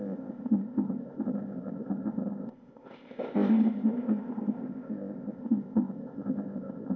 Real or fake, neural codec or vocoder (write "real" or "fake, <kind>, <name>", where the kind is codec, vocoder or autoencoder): fake, codec, ZipCodec